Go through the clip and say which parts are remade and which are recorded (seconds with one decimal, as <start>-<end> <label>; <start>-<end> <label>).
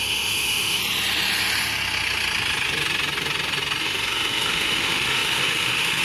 0.0-0.8 remade; 0.8-3.8 recorded; 3.8-6.0 remade